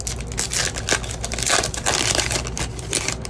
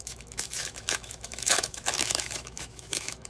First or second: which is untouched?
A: first